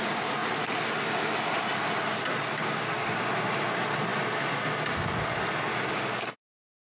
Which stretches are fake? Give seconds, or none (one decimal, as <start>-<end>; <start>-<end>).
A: 2.5-3.2; 5.7-6.3